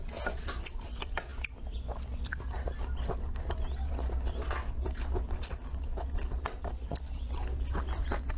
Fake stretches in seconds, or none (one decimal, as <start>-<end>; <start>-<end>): none